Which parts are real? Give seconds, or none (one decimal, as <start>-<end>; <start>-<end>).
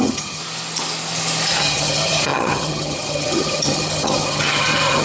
0.4-1.6